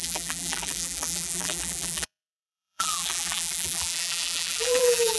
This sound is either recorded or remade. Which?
remade